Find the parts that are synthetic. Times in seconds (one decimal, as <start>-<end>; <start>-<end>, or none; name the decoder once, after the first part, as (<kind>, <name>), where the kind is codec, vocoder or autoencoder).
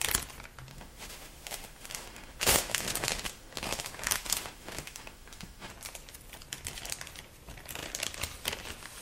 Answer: 0.7-5.7 (autoencoder, DAC-VAE)